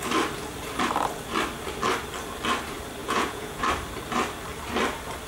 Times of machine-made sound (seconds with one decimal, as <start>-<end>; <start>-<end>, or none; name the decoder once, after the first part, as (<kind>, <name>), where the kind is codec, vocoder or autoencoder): 3.0-3.6 (vocoder, Vocos)